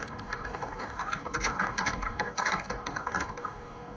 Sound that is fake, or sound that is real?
fake